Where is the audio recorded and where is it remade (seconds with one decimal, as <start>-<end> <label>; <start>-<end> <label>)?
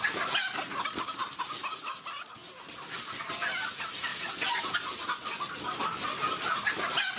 0.0-4.1 recorded; 4.1-4.6 remade; 4.6-7.2 recorded